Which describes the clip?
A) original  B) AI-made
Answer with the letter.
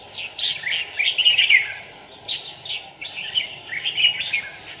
A